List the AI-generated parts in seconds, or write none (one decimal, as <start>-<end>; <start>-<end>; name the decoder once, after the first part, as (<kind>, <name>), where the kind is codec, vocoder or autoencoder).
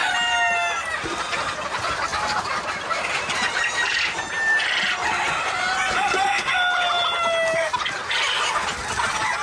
2.1-4.0 (vocoder, BigVGAN v2)